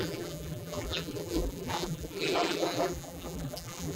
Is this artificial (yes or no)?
yes